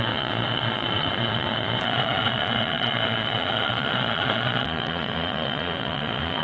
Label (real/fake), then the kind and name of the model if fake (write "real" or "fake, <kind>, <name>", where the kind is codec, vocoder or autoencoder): fake, vocoder, Vocos